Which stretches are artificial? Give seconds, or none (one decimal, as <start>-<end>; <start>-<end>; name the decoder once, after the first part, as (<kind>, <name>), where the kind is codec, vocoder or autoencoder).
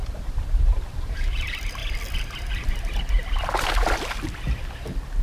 0.0-1.8 (vocoder, BigVGAN v2)